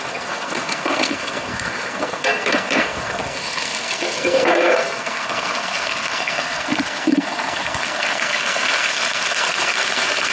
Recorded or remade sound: remade